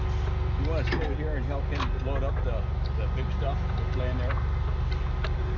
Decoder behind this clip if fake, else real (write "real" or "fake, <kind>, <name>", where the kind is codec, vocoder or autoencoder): real